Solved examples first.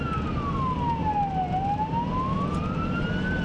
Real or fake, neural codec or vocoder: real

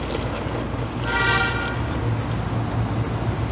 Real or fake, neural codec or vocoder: real